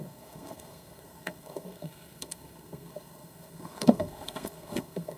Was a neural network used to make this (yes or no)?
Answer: yes